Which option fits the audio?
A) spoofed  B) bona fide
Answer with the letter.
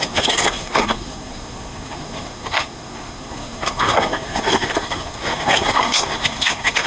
A